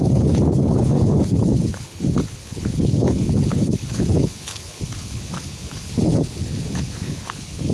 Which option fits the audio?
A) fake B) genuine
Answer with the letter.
A